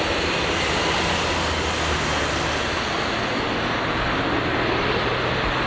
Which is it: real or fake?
real